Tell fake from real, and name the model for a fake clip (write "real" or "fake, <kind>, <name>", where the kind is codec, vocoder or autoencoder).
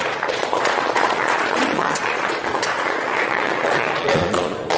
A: fake, vocoder, Vocos